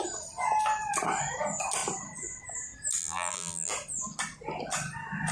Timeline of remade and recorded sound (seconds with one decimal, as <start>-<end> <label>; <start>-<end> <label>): 0.0-3.0 recorded; 3.0-3.7 remade; 3.7-5.3 recorded